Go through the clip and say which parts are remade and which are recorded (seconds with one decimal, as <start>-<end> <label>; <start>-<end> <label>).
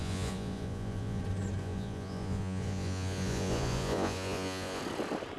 0.0-1.2 remade; 1.2-1.6 recorded; 1.6-4.8 remade; 4.8-5.4 recorded